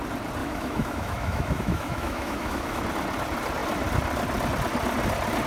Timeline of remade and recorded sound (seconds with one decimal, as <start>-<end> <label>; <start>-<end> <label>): 0.0-0.4 recorded; 0.4-2.8 remade; 2.8-5.5 recorded